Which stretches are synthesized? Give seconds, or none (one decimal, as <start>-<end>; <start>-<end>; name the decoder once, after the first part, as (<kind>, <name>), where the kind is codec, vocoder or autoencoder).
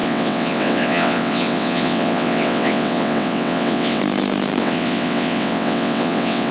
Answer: 0.0-4.0 (vocoder, WaveNeXt); 4.6-6.5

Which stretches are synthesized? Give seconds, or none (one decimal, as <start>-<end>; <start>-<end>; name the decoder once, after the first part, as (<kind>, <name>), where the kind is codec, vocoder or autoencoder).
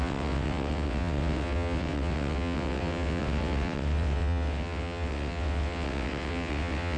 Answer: 0.0-7.0 (vocoder, WaveNeXt)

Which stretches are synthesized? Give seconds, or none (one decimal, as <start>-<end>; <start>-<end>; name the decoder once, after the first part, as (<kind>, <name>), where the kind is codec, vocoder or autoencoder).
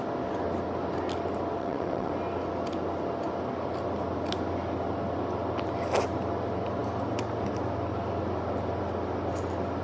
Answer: 1.6-2.1 (vocoder, WaveNeXt)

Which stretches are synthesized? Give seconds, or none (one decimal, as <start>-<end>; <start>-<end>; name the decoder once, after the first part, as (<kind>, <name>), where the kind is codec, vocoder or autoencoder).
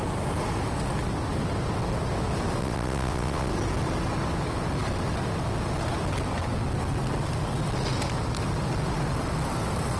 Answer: 2.6-3.5 (vocoder, WaveNeXt)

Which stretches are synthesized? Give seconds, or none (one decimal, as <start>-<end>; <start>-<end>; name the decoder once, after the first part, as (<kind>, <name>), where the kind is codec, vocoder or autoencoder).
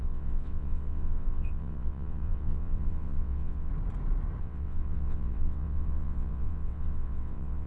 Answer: 0.0-3.7 (vocoder, WaveNeXt); 4.4-7.7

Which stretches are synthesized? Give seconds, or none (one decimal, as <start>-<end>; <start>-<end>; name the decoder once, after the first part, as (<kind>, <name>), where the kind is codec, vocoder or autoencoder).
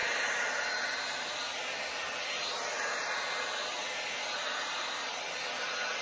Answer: none